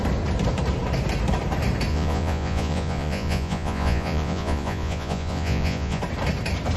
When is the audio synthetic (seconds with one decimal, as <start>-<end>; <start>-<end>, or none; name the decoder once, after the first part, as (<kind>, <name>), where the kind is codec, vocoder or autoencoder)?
1.9-6.0 (vocoder, Vocos)